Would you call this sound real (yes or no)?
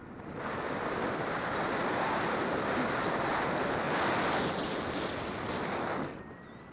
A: yes